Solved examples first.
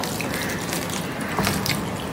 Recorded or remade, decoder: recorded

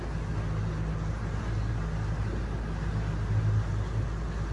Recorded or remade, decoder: recorded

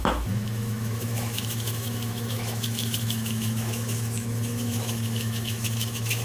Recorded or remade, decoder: remade, autoencoder, DAC-VAE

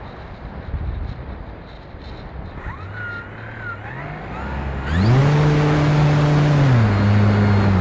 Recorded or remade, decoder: recorded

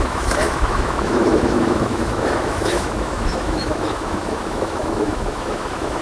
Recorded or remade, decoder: remade, autoencoder, DAC-VAE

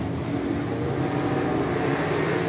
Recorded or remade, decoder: recorded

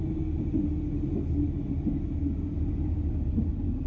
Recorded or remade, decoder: recorded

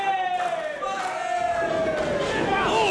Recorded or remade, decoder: recorded